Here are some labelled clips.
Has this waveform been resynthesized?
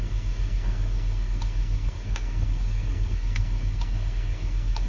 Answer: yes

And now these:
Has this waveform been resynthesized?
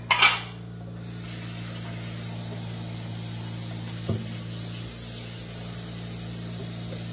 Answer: no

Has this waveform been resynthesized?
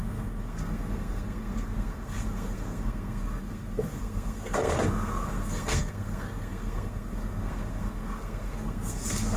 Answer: yes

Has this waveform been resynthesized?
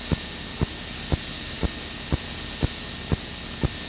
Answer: no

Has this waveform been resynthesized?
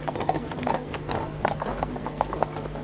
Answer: yes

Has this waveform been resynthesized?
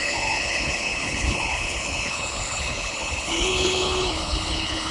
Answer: yes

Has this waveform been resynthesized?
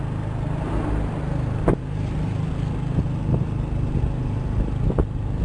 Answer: no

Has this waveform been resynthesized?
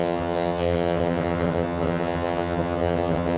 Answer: yes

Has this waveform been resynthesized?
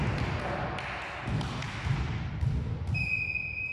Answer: no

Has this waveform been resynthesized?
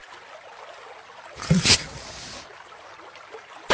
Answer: no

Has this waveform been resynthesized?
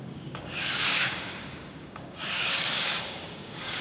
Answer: yes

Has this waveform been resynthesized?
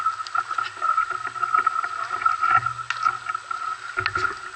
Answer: no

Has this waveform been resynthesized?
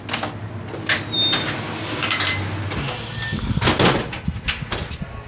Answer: no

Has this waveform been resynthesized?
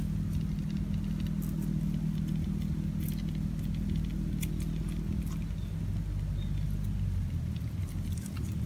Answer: no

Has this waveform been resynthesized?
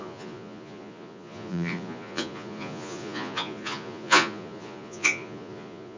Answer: yes